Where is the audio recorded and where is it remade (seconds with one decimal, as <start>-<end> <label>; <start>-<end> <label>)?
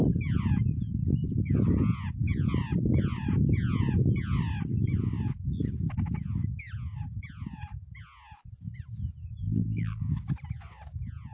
0.0-9.4 recorded; 9.4-10.0 remade; 10.0-11.3 recorded